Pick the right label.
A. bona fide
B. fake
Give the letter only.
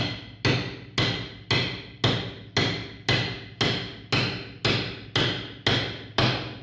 A